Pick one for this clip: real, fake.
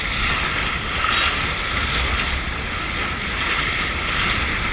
real